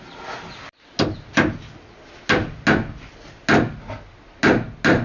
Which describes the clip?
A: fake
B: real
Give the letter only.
B